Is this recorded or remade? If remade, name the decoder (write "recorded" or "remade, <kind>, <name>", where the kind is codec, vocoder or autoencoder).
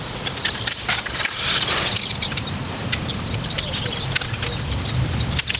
remade, vocoder, BigVGAN v2